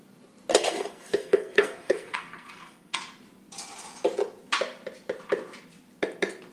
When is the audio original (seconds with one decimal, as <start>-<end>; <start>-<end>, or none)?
0.0-0.5; 3.0-6.5